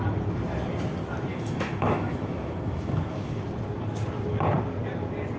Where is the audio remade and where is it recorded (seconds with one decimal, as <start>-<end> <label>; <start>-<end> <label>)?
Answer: 0.0-1.3 recorded; 1.3-3.4 remade; 3.4-5.4 recorded